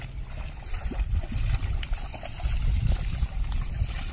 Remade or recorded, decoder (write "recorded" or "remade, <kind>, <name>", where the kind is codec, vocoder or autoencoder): recorded